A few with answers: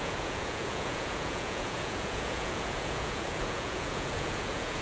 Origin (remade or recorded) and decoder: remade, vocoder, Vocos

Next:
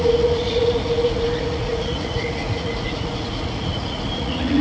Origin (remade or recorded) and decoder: remade, vocoder, Vocos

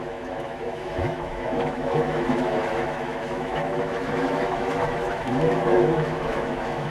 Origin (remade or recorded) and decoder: remade, autoencoder, DAC-VAE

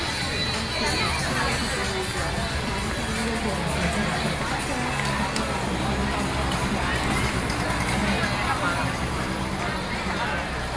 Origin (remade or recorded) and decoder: recorded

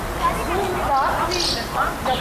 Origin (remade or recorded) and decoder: recorded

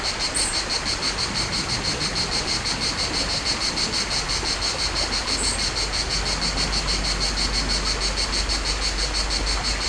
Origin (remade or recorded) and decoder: recorded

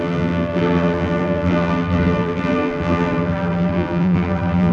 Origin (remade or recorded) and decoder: remade, vocoder, BigVGAN v2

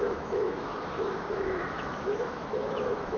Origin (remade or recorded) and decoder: remade, autoencoder, DAC-VAE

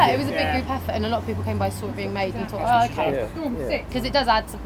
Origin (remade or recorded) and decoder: recorded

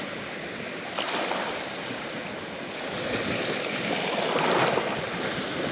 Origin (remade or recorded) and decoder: recorded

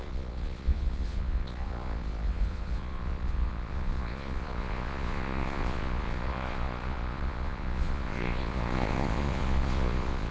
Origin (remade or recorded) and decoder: remade, vocoder, Vocos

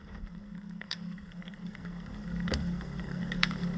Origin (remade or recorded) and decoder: remade, codec, SNAC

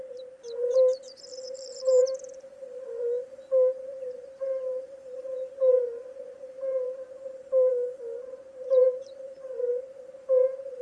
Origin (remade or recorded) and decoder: remade, vocoder, BigVGAN v2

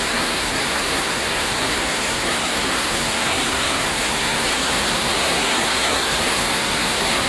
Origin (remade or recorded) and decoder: remade, codec, SNAC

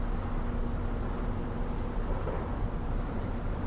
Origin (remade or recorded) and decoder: recorded